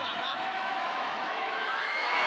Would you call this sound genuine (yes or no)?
no